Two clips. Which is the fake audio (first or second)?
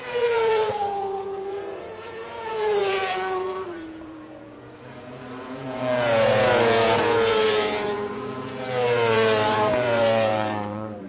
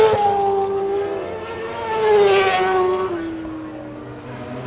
first